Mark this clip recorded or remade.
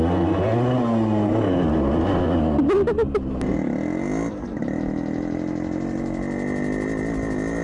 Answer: recorded